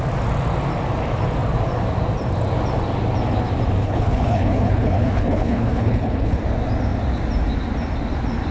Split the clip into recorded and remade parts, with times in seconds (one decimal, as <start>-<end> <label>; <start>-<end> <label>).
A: 0.0-3.8 recorded; 3.8-6.4 remade; 6.4-8.5 recorded